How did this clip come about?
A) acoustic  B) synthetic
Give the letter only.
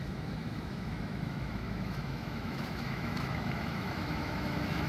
B